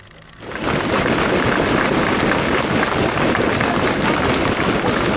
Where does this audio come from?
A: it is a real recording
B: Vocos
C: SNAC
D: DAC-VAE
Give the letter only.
A